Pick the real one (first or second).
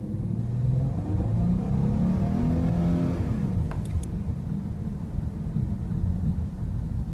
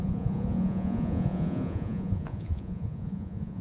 first